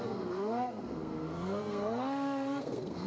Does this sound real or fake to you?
fake